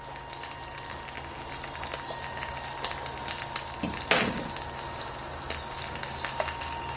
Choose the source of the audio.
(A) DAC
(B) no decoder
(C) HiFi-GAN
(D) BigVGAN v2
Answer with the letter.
B